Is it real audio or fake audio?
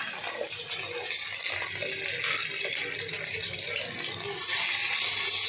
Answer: real